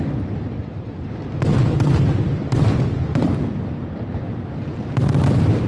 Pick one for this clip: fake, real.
fake